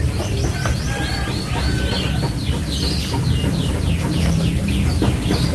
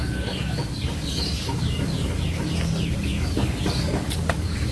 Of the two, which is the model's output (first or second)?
second